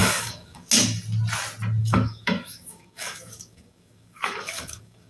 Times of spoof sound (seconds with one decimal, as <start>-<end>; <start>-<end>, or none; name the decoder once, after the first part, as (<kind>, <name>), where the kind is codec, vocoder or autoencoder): 0.0-0.7 (codec, DAC); 1.8-5.1